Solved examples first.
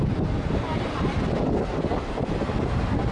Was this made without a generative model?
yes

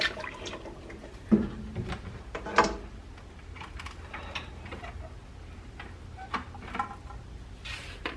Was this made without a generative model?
yes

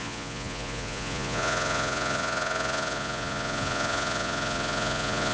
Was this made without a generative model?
no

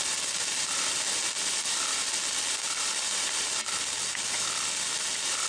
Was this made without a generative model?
yes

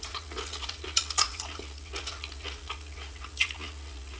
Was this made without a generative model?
no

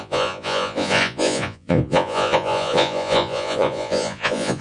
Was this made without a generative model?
no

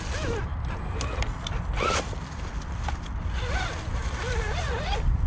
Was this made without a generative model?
yes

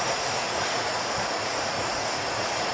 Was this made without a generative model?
no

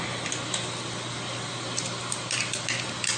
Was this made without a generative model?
yes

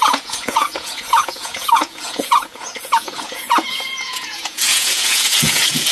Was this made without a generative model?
no